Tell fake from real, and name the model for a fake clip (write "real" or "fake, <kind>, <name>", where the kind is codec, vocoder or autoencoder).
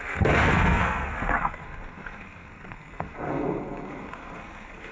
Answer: fake, codec, SNAC